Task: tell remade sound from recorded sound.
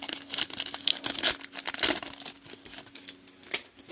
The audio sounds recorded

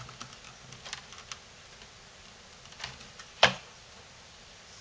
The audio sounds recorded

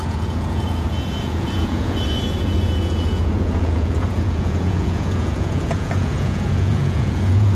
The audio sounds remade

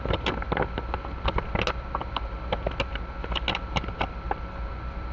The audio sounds recorded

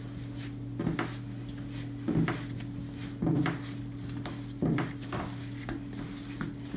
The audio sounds recorded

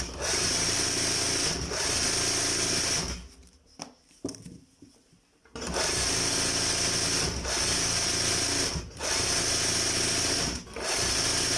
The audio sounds recorded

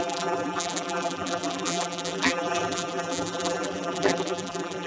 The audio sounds remade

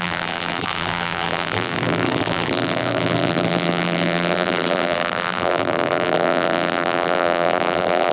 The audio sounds remade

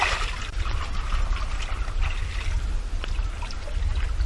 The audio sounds recorded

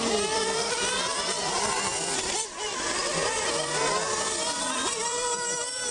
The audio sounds remade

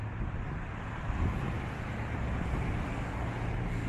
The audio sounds recorded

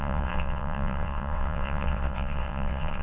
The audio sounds remade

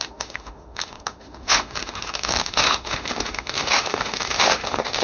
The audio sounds remade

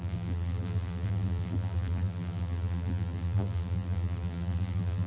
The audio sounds remade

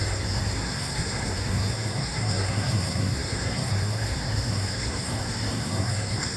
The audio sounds remade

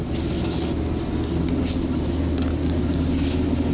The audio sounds recorded